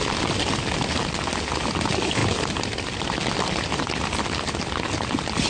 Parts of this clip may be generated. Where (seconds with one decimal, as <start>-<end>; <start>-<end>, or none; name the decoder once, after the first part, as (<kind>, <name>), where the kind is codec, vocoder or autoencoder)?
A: none